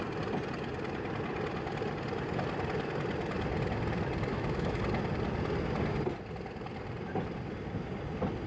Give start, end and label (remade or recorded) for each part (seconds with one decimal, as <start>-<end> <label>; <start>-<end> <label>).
0.0-4.3 recorded; 4.3-4.8 remade; 4.8-8.5 recorded